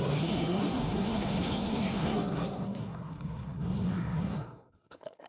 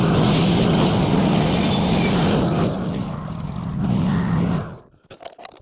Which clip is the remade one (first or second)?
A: first